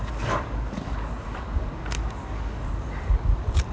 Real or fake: fake